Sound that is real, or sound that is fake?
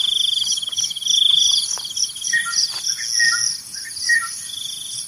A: real